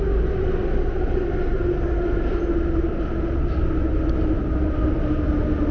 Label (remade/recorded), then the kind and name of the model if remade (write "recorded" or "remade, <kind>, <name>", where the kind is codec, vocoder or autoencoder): recorded